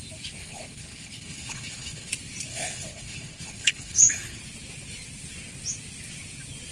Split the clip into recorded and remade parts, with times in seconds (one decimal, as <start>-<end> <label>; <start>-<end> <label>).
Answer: 0.0-0.4 recorded; 0.4-2.1 remade; 2.1-2.5 recorded; 2.5-4.4 remade; 4.4-6.7 recorded

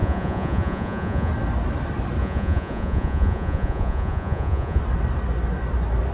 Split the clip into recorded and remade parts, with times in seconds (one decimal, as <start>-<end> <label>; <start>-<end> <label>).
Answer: 0.0-1.3 remade; 1.3-2.2 recorded; 2.2-4.8 remade; 4.8-6.1 recorded